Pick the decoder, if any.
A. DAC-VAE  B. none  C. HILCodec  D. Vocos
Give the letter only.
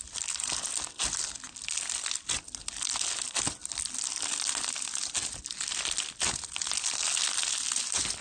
B